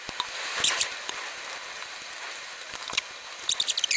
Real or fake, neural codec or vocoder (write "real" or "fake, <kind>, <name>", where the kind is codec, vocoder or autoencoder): real